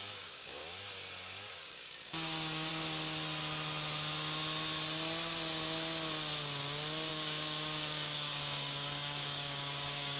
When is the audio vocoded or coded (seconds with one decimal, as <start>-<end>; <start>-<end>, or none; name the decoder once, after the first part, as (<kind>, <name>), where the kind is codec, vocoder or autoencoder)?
0.0-0.6 (codec, DAC); 1.5-2.7; 7.1-10.2